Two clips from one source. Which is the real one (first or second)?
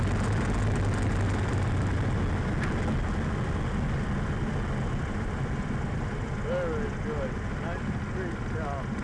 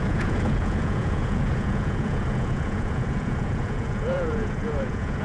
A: first